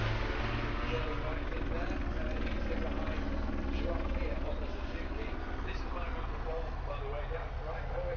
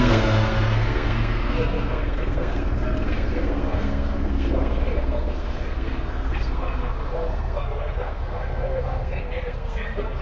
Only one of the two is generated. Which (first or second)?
second